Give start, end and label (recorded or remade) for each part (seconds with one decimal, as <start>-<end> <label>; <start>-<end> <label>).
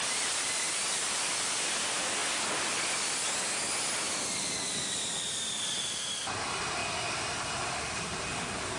0.0-8.8 recorded